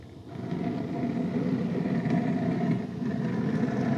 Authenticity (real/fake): real